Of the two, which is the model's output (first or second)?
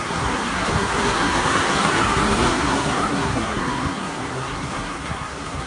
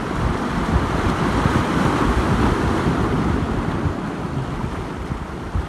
first